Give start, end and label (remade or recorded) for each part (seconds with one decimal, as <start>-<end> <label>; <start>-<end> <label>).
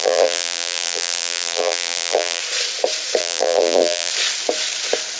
0.0-2.4 remade; 2.4-3.2 recorded; 3.2-4.1 remade; 4.1-5.2 recorded